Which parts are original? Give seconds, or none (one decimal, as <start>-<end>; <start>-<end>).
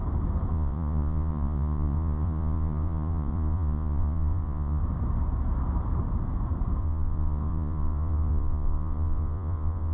0.0-0.5; 4.8-6.8